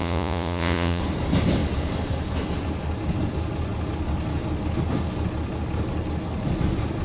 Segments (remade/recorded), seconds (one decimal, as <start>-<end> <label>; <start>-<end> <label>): 0.0-1.0 remade; 1.0-7.0 recorded